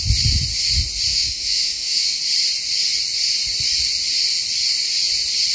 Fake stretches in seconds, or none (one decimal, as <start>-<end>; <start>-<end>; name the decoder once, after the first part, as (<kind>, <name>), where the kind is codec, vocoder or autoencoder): 1.1-2.2 (autoencoder, DAC-VAE)